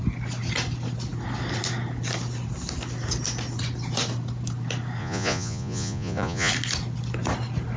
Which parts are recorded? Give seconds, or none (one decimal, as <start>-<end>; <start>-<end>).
0.0-5.0; 6.5-7.8